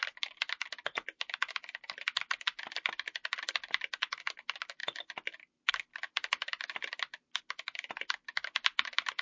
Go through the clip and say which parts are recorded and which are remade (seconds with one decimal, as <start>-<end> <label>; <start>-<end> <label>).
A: 0.0-9.2 recorded